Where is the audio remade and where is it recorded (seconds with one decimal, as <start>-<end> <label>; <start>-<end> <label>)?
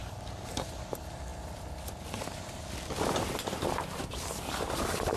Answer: 0.0-0.6 remade; 0.6-1.3 recorded; 1.3-4.4 remade; 4.4-5.2 recorded